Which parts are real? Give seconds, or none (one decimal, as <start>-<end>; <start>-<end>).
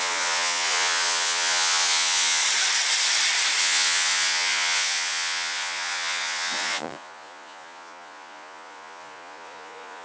2.4-3.6